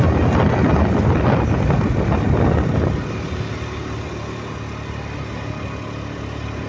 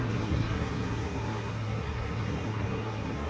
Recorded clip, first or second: first